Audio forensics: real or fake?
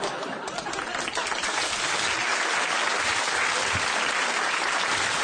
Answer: real